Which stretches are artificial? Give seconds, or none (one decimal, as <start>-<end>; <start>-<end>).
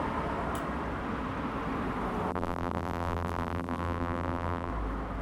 2.3-4.7